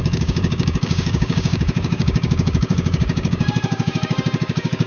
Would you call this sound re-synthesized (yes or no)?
yes